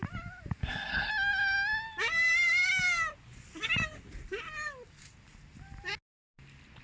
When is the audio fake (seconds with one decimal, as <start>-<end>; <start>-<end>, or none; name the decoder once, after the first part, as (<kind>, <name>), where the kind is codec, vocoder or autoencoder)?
0.6-1.1 (codec, SNAC)